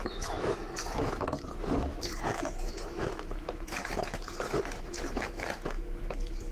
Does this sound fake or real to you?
fake